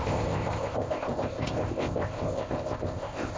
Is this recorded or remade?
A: remade